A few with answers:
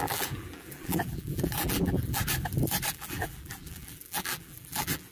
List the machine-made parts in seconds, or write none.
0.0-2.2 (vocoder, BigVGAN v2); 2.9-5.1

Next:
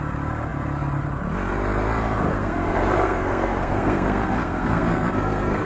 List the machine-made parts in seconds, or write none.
2.3-5.7 (codec, SNAC)

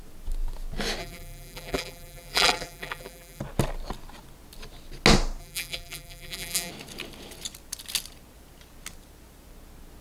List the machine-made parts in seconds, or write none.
1.0-3.4 (vocoder, BigVGAN v2); 5.4-6.7

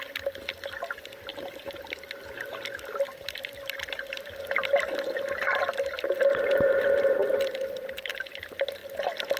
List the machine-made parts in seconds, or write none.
none

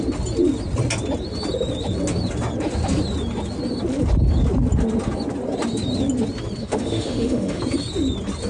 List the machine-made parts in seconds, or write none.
6.6-7.6 (autoencoder, DAC-VAE)

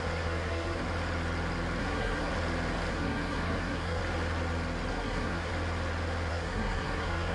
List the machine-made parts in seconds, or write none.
0.0-0.8 (codec, SNAC); 1.8-2.3; 2.9-4.0; 4.9-5.5; 6.3-7.3